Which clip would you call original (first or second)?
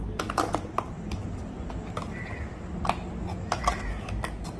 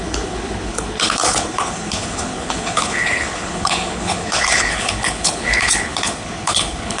first